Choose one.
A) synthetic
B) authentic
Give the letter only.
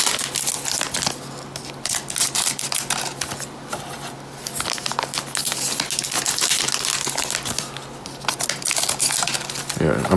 B